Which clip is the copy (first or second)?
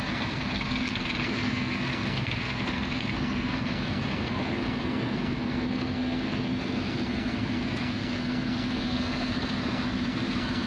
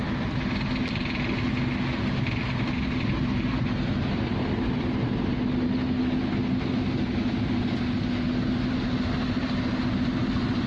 first